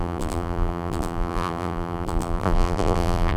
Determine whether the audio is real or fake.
fake